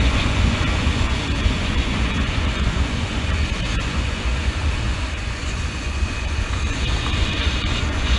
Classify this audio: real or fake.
fake